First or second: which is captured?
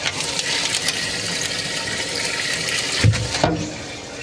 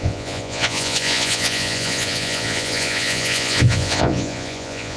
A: first